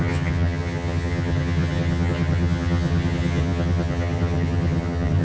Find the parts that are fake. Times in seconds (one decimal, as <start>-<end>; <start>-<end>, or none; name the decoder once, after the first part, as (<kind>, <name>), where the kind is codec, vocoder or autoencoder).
0.0-5.2 (vocoder, HiFi-GAN)